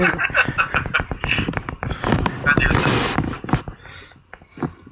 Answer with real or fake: real